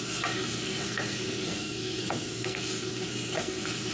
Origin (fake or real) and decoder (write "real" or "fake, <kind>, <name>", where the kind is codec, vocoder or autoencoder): fake, codec, SNAC